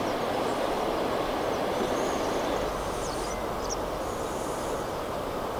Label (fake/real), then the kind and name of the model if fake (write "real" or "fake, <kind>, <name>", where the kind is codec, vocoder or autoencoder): real